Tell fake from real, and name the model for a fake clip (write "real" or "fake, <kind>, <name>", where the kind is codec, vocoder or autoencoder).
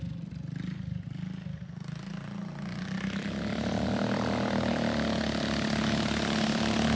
real